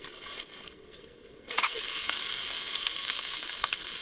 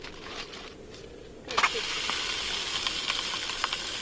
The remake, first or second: first